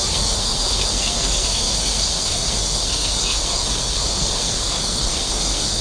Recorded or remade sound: remade